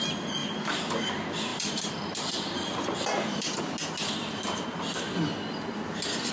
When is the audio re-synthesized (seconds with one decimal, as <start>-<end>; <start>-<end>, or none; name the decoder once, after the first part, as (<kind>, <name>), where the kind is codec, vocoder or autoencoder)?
0.4-1.1 (vocoder, BigVGAN v2); 1.5-3.6